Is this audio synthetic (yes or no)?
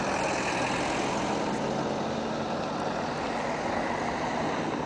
no